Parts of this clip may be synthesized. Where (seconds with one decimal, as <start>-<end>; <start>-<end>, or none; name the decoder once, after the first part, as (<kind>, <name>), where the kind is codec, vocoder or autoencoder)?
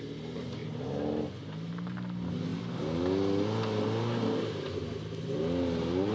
none